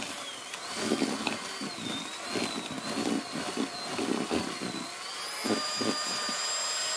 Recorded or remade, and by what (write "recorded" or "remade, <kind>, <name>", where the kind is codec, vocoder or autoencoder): recorded